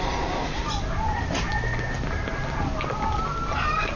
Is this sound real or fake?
real